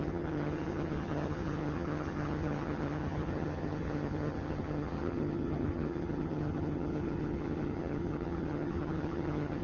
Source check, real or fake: fake